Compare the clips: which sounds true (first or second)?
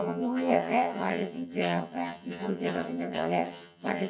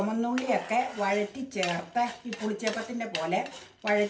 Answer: second